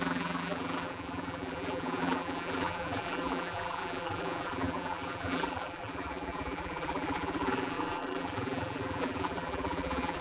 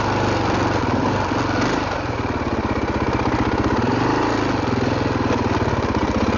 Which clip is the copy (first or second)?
first